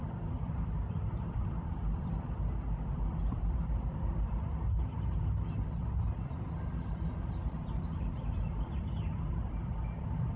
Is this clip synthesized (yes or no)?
yes